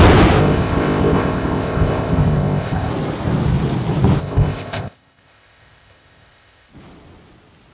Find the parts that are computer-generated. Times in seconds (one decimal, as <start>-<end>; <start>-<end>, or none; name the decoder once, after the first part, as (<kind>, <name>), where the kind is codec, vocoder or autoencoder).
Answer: 0.4-2.9 (codec, ZipCodec); 4.2-6.7